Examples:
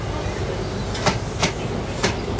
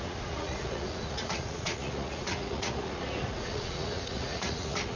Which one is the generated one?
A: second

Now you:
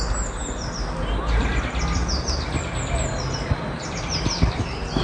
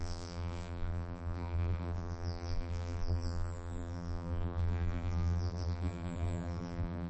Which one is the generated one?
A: second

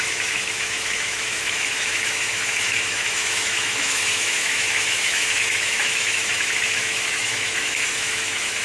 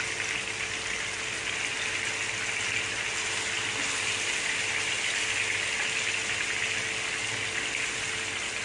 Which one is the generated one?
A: first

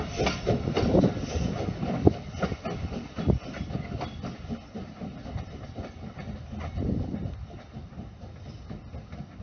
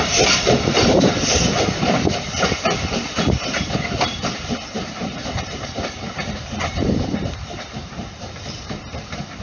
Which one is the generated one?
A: second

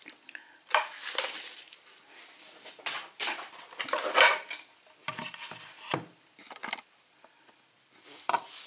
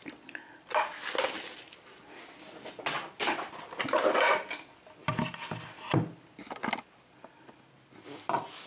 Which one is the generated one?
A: first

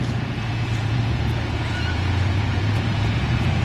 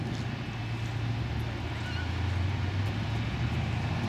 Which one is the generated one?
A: first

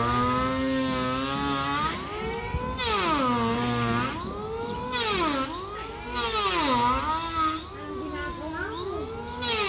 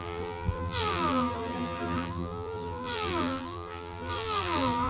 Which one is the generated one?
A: second